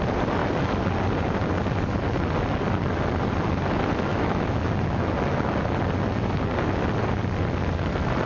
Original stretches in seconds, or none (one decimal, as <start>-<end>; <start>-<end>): 0.0-4.1; 5.5-8.3